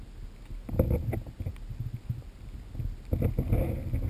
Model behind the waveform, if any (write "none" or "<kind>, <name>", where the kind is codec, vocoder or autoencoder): none